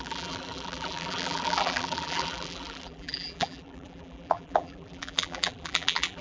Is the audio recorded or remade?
remade